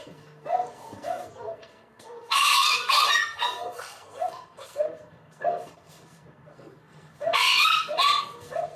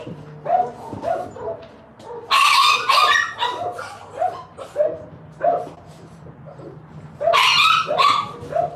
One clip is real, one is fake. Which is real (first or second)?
second